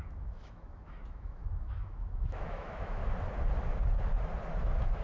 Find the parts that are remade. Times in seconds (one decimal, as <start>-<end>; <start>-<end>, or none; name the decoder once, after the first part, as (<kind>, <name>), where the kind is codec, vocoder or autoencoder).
0.0-3.0 (autoencoder, DAC-VAE); 4.6-5.0